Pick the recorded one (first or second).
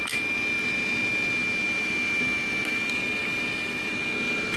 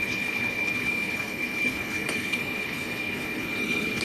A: first